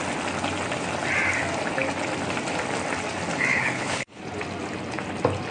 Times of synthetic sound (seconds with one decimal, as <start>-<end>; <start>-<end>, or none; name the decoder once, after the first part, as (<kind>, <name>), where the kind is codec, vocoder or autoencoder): 3.5-4.2 (codec, HILCodec)